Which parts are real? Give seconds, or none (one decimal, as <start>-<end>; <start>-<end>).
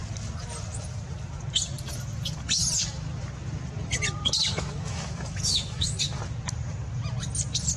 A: 0.0-4.5; 6.2-7.8